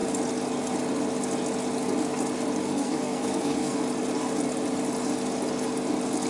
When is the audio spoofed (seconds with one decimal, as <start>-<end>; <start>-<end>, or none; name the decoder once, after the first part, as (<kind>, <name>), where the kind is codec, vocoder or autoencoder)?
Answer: 2.6-3.8 (codec, SNAC)